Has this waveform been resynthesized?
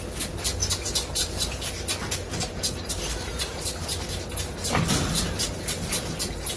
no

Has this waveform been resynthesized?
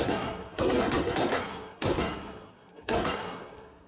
yes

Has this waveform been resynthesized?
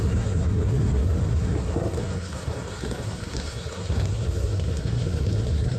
yes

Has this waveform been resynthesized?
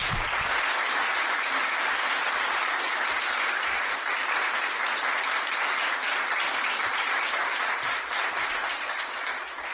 no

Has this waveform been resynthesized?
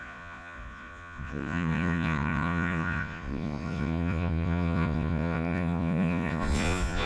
yes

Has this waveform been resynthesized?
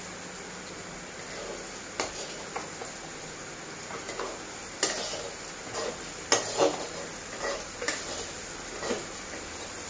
no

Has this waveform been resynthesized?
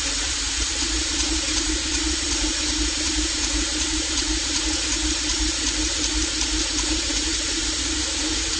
yes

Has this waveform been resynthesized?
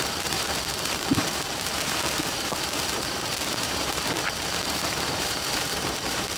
yes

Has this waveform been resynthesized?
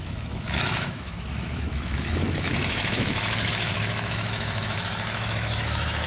yes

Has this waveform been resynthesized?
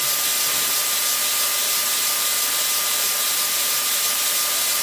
no